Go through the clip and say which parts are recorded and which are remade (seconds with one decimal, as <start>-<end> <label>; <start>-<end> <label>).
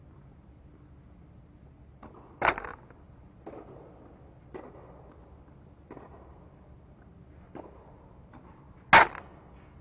0.0-9.8 recorded